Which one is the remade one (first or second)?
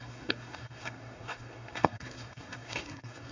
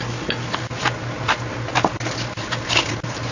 first